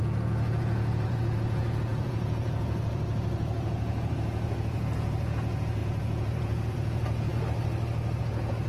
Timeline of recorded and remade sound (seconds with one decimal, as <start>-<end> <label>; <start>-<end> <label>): 0.0-7.3 remade; 7.3-8.2 recorded; 8.2-8.7 remade